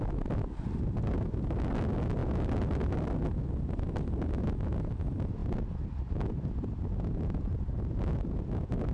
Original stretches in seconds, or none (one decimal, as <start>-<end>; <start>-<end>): 0.0-8.9